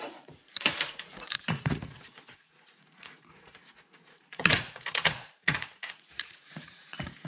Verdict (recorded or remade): remade